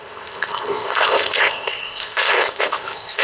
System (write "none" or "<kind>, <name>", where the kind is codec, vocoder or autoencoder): codec, ZipCodec